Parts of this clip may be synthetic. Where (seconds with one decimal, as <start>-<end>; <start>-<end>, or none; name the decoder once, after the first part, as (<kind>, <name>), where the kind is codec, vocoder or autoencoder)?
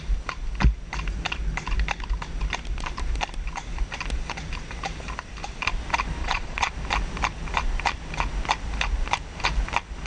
6.2-6.7 (vocoder, Vocos)